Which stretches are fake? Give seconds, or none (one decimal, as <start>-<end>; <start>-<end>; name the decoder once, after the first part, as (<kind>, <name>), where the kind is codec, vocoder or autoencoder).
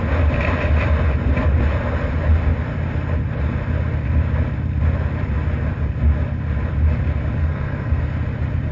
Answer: 7.4-8.0 (codec, SNAC)